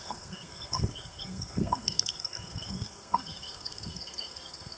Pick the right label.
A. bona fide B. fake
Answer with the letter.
B